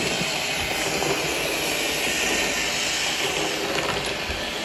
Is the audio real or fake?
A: real